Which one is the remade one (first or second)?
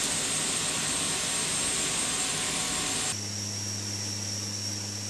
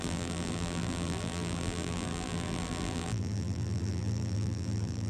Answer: second